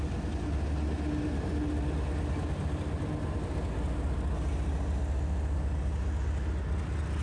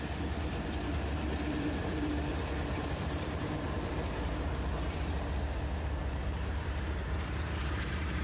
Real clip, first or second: first